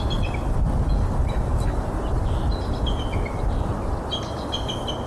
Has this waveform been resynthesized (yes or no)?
no